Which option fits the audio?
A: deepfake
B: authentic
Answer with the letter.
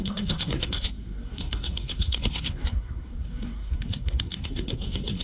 A